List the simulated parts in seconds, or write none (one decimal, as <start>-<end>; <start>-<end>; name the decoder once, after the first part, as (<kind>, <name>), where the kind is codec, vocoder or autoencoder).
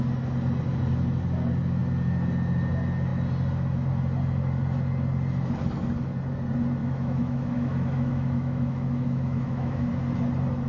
6.8-9.9 (autoencoder, DAC-VAE)